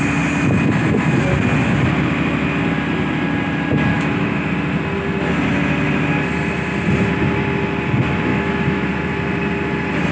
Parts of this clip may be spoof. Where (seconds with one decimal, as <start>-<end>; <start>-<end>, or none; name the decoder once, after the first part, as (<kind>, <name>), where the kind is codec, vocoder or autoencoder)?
3.9-4.5 (autoencoder, DAC-VAE); 8.3-8.9